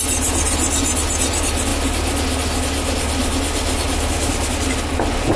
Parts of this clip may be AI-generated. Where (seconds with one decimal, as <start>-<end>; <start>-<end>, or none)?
none